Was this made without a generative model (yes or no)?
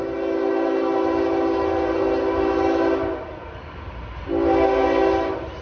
yes